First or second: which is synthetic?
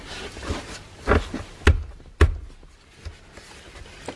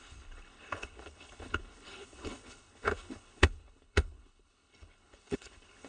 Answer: second